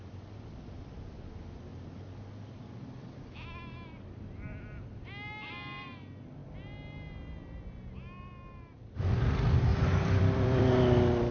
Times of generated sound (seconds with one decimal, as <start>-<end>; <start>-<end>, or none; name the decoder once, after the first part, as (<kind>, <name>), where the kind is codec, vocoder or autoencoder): 9.7-10.6 (vocoder, BigVGAN v2)